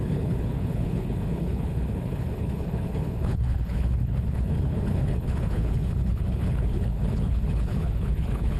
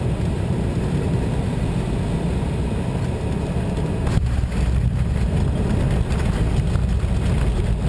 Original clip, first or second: second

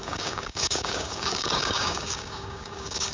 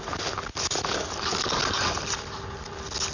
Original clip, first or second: second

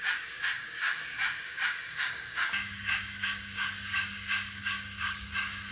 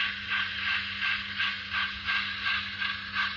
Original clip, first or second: second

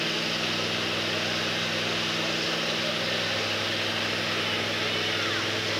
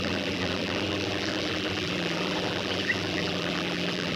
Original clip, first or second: first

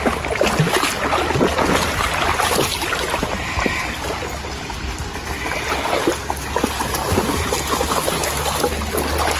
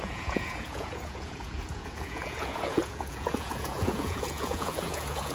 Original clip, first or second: first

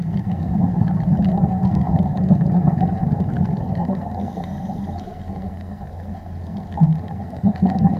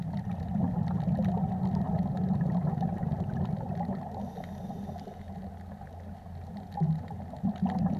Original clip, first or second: second